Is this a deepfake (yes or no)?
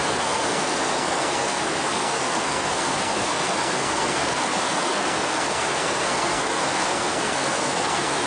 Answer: yes